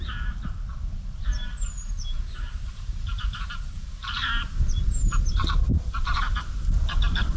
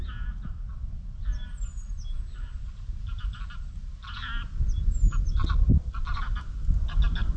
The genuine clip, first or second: second